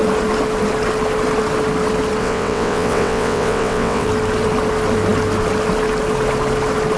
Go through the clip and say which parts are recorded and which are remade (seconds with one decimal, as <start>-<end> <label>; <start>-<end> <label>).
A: 0.0-2.2 recorded; 2.2-4.1 remade; 4.1-7.0 recorded